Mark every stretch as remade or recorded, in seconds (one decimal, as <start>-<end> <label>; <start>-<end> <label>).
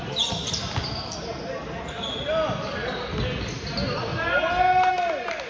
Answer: 0.0-5.5 recorded